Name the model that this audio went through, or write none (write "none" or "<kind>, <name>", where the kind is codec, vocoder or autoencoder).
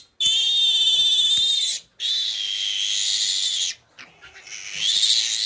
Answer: none